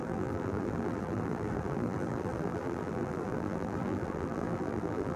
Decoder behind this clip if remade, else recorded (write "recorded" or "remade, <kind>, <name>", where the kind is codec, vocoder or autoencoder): remade, vocoder, BigVGAN v2